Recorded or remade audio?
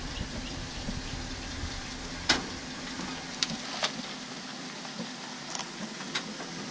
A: remade